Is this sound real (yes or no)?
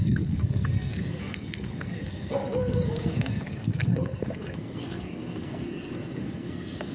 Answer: no